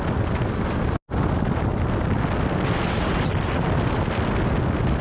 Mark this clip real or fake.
real